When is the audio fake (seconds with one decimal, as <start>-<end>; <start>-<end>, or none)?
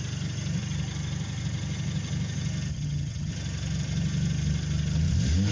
2.7-3.3